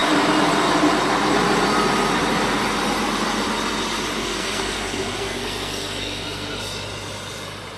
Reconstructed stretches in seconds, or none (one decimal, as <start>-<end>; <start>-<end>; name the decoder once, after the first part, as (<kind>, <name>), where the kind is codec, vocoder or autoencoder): 4.2-6.6 (codec, SNAC)